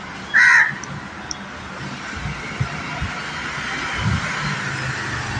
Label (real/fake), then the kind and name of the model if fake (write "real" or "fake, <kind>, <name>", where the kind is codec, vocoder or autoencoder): real